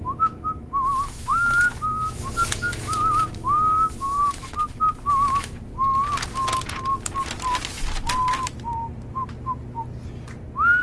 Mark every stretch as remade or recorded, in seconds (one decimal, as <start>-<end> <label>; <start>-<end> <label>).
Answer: 0.0-5.7 remade; 5.7-10.8 recorded